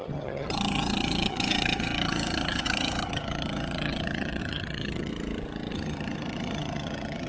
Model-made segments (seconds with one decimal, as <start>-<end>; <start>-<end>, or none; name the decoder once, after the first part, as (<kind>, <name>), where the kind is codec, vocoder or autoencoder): 0.0-5.1 (vocoder, HiFi-GAN); 5.7-7.3